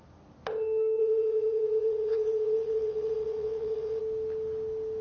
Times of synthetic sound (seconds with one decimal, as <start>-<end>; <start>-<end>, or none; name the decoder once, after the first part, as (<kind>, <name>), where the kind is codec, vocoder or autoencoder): 1.0-4.0 (vocoder, WaveNeXt)